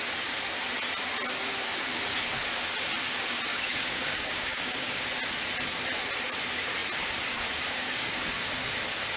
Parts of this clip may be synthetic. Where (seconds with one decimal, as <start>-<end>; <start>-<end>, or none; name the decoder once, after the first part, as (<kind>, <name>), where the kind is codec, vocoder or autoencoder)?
3.5-5.2 (codec, DAC); 7.8-8.5